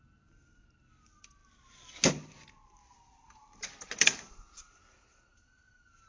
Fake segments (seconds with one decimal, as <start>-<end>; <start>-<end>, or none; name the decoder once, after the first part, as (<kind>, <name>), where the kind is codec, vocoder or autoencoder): 0.0-1.4 (vocoder, BigVGAN v2); 2.1-6.1

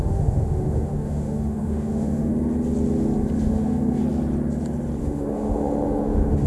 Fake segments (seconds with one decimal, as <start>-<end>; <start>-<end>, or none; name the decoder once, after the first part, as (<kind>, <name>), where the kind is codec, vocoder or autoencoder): 0.0-2.3 (autoencoder, DAC-VAE); 3.4-4.0; 5.0-6.5

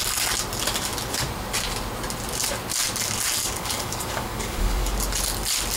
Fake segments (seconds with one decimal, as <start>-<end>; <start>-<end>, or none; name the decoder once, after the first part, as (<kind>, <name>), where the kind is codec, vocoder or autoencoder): 3.4-5.0 (codec, DAC)